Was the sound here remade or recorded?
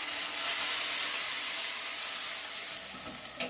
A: recorded